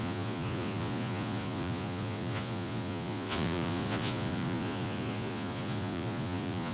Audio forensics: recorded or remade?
remade